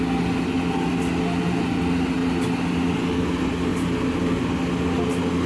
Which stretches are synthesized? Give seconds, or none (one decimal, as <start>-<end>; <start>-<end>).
none